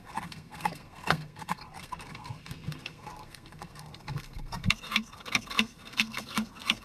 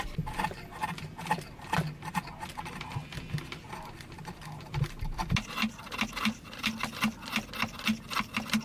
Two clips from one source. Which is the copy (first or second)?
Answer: first